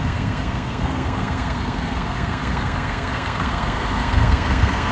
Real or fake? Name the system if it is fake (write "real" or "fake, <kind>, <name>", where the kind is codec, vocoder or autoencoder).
fake, codec, SNAC